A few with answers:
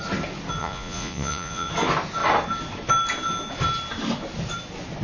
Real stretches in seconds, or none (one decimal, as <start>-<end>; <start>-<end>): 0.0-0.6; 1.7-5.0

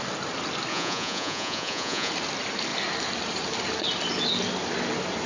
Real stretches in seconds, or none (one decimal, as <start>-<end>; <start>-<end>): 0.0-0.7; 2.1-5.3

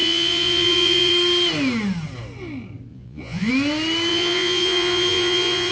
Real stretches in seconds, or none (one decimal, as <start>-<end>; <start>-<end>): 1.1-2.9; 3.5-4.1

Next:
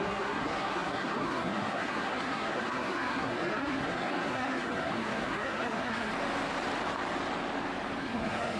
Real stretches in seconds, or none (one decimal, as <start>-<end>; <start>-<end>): 6.1-8.0